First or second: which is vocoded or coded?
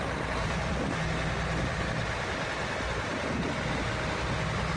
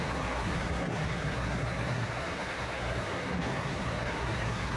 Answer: second